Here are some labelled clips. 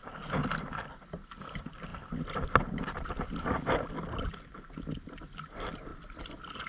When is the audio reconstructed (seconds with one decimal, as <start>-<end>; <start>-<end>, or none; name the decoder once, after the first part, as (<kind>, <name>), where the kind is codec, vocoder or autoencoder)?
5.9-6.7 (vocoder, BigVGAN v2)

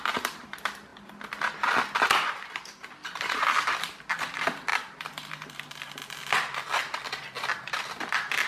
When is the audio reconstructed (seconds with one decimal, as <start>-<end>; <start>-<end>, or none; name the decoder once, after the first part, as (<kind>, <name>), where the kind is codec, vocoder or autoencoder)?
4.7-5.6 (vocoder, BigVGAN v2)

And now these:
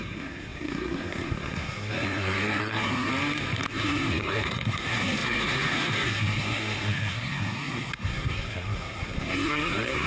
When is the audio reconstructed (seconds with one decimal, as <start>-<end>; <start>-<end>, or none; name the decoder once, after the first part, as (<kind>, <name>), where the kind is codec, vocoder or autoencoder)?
0.0-3.1 (codec, SNAC); 3.7-10.1

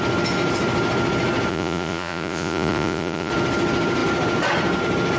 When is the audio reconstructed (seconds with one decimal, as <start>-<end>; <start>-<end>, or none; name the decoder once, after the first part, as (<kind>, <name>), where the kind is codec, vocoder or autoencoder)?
1.5-3.3 (vocoder, Vocos)